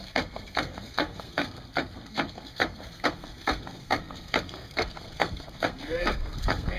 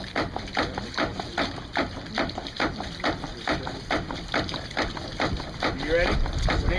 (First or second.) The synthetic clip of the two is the first